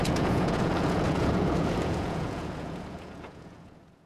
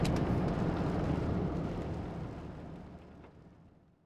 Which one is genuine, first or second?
second